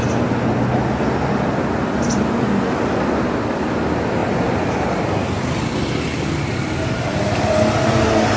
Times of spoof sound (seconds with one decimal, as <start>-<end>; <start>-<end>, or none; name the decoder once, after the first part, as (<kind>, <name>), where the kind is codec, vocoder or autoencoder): none